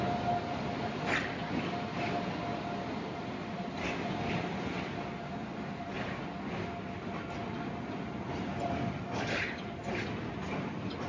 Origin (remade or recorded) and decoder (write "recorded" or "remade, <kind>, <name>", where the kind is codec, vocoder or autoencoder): recorded